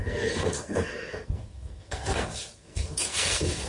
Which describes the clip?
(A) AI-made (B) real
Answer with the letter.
A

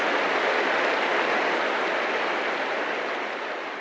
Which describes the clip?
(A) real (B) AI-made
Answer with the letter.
A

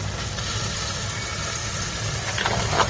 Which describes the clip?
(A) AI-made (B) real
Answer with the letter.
B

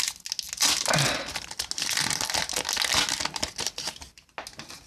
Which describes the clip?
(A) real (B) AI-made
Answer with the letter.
A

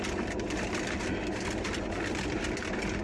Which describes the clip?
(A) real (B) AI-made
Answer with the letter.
A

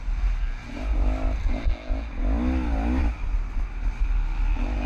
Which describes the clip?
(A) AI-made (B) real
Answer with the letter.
B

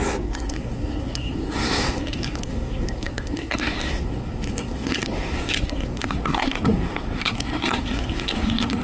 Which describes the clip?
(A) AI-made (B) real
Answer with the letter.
A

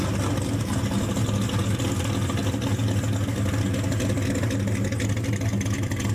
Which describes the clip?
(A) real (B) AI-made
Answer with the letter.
A